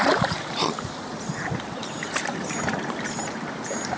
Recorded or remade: remade